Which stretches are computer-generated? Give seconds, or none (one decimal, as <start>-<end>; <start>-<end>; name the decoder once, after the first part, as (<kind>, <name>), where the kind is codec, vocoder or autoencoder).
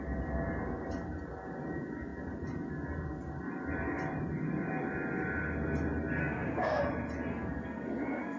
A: 6.2-6.8 (codec, SNAC); 7.3-8.4